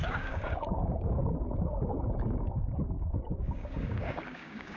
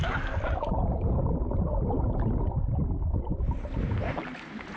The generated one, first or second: first